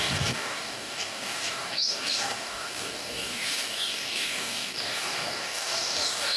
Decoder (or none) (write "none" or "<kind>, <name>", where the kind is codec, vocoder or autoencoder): codec, DAC